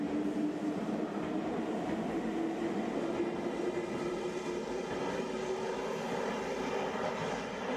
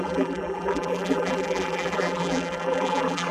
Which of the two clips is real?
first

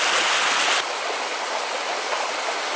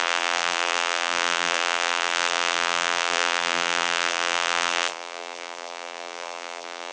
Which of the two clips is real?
first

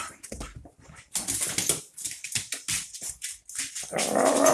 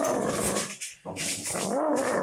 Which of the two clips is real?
first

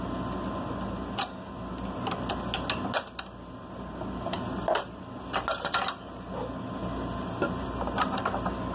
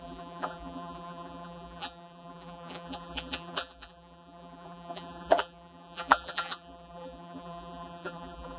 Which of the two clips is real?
first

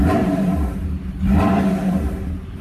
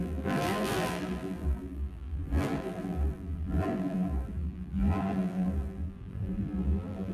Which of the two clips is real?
first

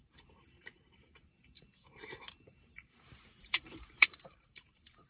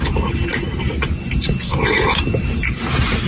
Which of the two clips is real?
second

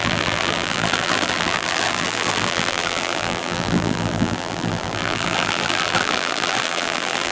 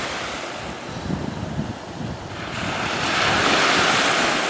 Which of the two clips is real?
second